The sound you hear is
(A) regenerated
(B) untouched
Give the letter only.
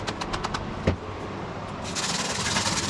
B